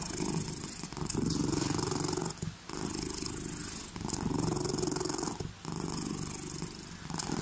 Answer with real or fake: real